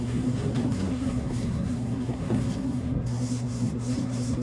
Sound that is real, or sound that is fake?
fake